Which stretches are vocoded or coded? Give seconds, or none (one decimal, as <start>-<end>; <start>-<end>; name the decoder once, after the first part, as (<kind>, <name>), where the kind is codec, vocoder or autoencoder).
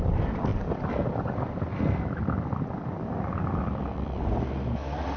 none